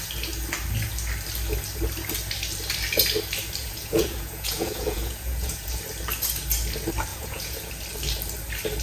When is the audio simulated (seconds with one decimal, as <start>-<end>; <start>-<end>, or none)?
3.6-5.8; 7.1-7.7